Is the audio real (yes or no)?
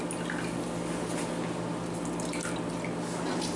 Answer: yes